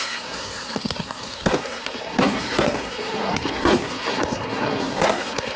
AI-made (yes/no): yes